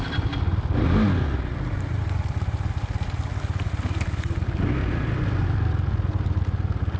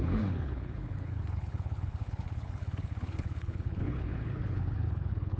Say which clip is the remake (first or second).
second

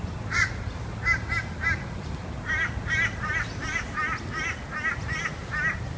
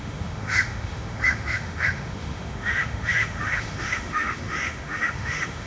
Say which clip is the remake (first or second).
second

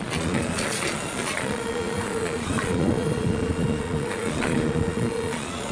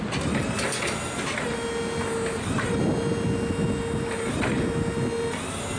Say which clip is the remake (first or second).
first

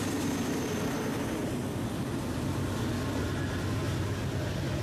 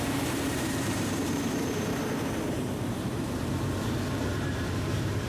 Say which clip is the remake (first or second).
second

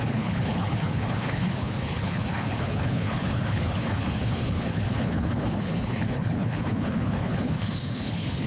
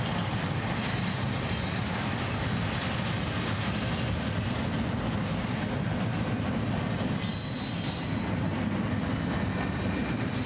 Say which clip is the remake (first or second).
first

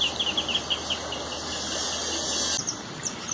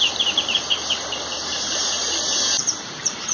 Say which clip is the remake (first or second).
second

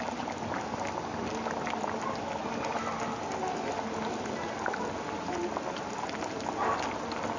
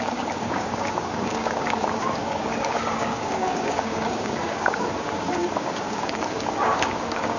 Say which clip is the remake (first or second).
second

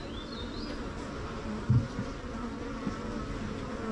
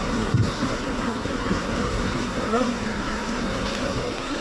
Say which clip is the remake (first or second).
second